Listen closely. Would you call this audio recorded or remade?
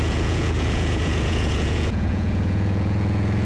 remade